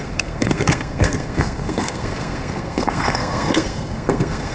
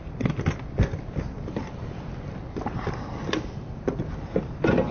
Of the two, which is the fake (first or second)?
first